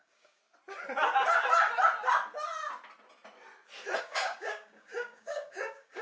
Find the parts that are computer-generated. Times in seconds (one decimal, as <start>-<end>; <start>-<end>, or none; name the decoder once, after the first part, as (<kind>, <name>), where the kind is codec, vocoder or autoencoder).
0.0-0.4 (codec, DAC); 4.0-6.0